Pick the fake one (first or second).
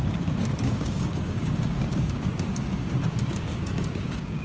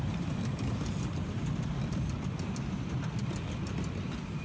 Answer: first